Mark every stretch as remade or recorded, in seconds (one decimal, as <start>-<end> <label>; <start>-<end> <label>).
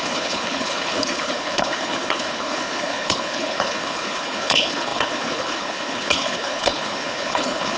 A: 0.0-7.8 remade